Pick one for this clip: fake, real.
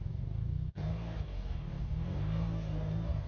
fake